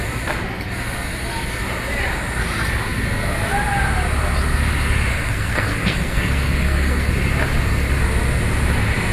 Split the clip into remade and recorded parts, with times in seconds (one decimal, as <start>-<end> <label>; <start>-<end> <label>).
0.0-5.1 recorded; 5.1-7.1 remade; 7.1-9.1 recorded